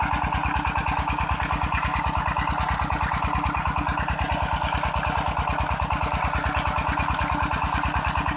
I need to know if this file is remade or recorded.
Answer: recorded